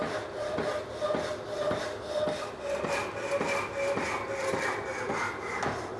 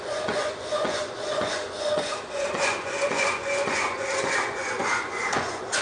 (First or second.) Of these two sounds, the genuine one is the first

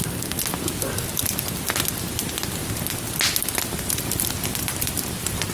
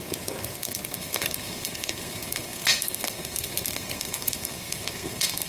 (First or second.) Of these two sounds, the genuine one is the first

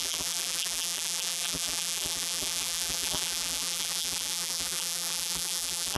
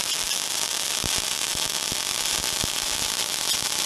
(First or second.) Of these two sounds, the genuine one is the second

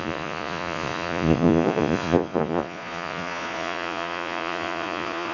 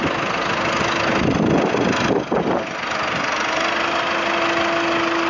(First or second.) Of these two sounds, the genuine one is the second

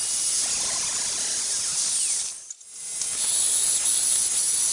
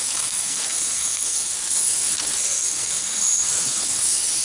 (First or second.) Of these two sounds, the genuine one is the first